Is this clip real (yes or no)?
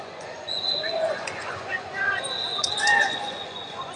no